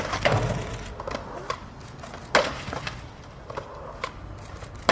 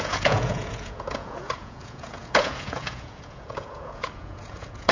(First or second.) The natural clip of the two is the first